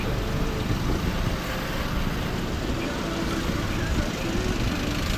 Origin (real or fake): real